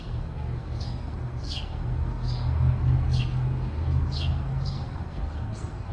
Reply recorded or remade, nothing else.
remade